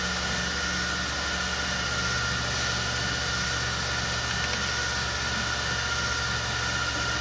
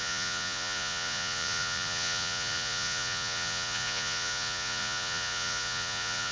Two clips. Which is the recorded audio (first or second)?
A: first